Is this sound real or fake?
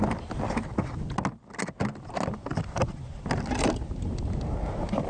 real